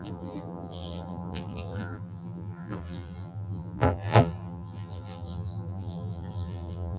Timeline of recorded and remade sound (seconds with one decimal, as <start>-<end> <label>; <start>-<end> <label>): 0.0-7.0 remade